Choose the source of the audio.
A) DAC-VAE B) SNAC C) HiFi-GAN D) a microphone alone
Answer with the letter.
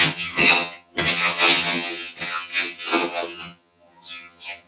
C